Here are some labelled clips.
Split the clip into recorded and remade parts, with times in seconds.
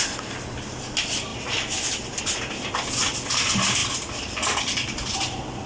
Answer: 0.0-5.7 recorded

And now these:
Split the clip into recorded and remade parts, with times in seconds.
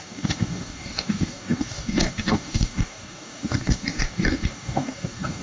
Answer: 0.0-5.4 remade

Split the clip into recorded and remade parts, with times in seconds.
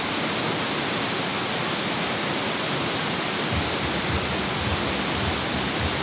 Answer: 0.0-6.0 recorded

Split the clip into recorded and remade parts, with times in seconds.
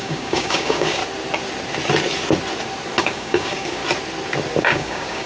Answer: 0.0-1.0 remade; 1.0-3.0 recorded; 3.0-3.8 remade; 3.8-4.6 recorded; 4.6-5.3 remade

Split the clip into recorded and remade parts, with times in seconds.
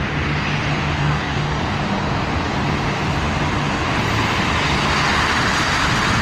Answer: 0.0-1.0 recorded; 1.0-1.6 remade; 1.6-6.2 recorded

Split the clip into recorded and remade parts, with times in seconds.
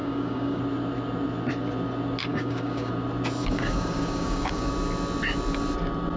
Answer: 0.0-0.6 remade; 0.6-2.3 recorded; 2.3-2.9 remade; 2.9-3.4 recorded; 3.4-4.7 remade; 4.7-6.2 recorded